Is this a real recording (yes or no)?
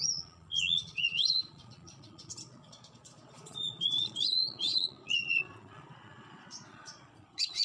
no